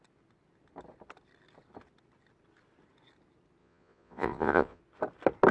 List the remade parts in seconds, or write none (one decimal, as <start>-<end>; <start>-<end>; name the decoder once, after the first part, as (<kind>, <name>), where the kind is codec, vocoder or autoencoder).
3.6-4.8 (vocoder, Vocos)